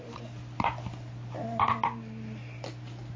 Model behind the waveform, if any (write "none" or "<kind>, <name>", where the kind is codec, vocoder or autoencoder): none